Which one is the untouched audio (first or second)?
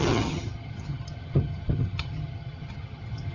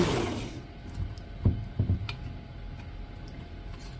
second